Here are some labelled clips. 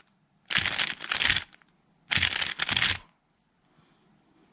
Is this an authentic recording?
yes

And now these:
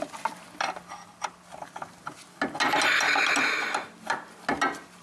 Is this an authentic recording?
yes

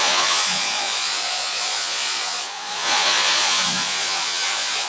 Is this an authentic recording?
no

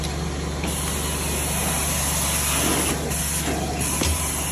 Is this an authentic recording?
yes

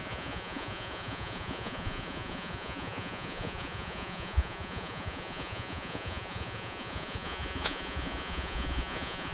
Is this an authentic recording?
no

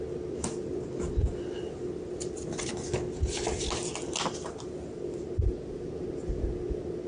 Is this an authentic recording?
yes